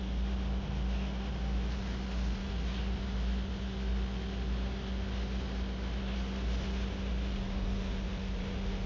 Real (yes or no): yes